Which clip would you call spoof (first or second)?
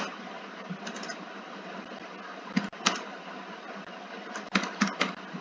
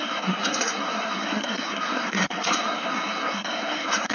second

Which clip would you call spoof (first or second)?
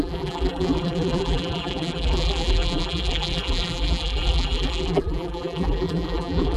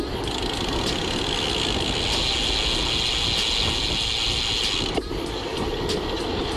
first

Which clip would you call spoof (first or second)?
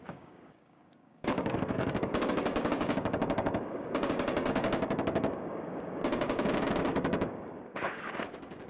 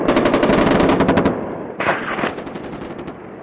first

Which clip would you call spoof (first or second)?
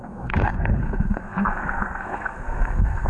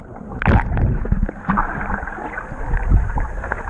first